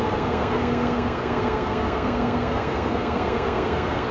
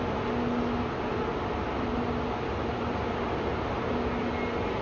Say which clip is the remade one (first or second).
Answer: first